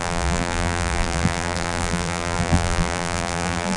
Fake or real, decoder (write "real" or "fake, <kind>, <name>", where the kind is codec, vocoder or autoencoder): fake, vocoder, BigVGAN v2